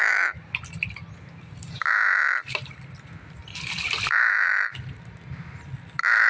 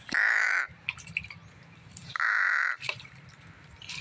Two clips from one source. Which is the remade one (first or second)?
second